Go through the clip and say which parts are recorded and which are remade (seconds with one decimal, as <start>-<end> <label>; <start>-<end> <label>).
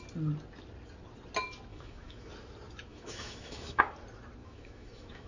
0.0-1.7 recorded; 1.7-2.3 remade; 2.3-2.9 recorded; 2.9-3.8 remade; 3.8-4.4 recorded; 4.4-5.3 remade